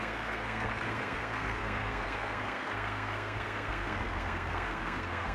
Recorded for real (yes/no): no